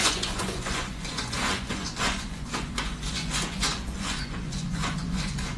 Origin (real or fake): fake